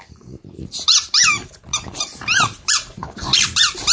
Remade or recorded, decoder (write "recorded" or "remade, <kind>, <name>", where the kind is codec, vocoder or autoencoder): remade, vocoder, BigVGAN v2